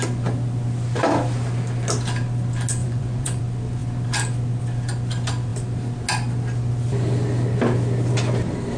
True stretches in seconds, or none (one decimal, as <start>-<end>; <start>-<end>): 0.0-2.8; 3.4-8.8